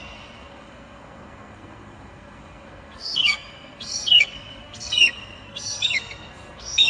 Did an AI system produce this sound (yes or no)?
yes